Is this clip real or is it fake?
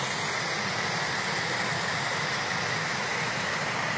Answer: real